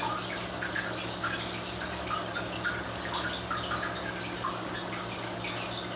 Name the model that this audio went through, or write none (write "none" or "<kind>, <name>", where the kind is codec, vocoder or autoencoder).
none